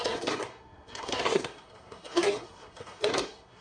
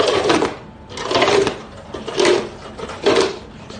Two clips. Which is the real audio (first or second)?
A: second